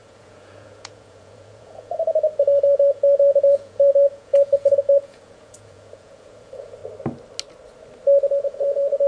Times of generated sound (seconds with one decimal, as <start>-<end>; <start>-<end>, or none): 0.0-6.8; 8.4-9.1